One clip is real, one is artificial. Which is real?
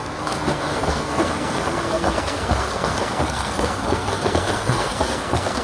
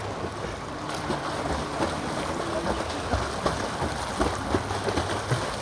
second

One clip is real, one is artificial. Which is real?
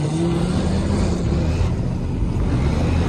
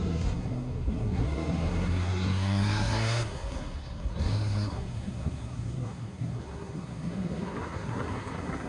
first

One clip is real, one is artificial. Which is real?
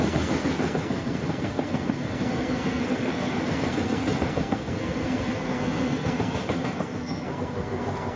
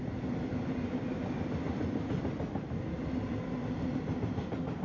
second